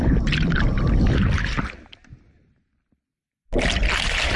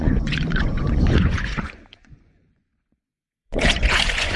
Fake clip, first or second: second